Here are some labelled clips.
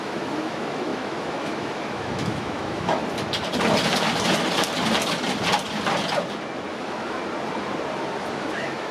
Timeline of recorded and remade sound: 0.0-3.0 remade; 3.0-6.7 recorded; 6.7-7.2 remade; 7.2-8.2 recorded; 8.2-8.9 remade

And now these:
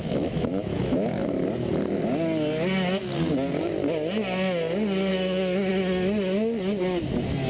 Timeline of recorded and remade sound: 0.0-1.3 remade; 1.3-5.1 recorded; 5.1-5.7 remade; 5.7-7.5 recorded

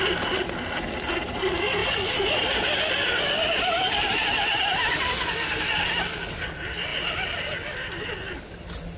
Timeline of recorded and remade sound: 0.0-9.0 recorded

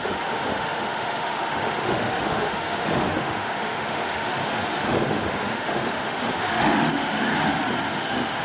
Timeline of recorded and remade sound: 0.0-7.3 remade; 7.3-7.9 recorded; 7.9-8.4 remade

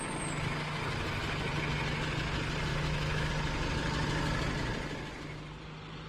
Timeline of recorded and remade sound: 0.0-2.7 recorded; 2.7-3.3 remade; 3.3-6.1 recorded

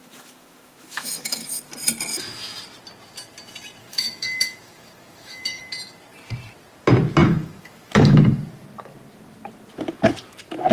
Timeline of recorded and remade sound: 0.0-1.6 remade; 1.6-2.1 recorded; 2.1-2.6 remade; 2.6-3.8 recorded; 3.8-5.6 remade; 5.6-7.2 recorded; 7.2-8.2 remade; 8.2-10.7 recorded

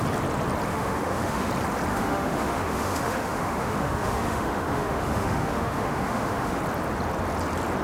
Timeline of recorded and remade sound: 0.0-0.7 recorded; 0.7-1.5 remade; 1.5-1.9 recorded; 1.9-6.6 remade; 6.6-7.8 recorded